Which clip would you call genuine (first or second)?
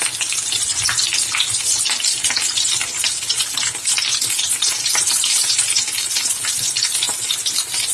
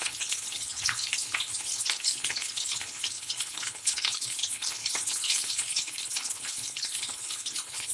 first